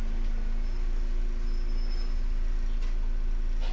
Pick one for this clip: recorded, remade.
recorded